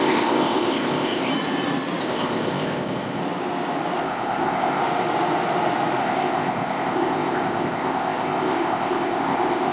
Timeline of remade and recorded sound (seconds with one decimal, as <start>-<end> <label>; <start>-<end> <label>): 0.0-1.3 remade; 1.3-2.0 recorded; 2.0-3.2 remade; 3.2-4.0 recorded; 4.0-4.8 remade; 4.8-6.0 recorded; 6.0-9.7 remade